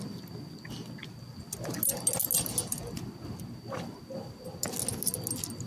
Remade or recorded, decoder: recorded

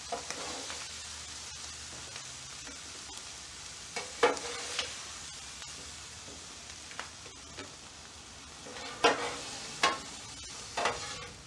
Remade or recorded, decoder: recorded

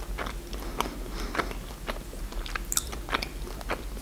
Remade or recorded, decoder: recorded